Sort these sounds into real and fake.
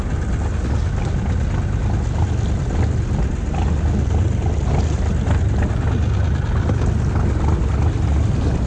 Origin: real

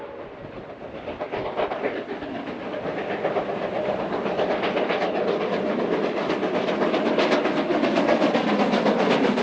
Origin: real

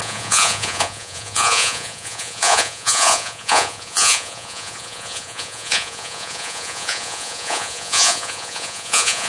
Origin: fake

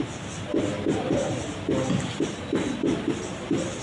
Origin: real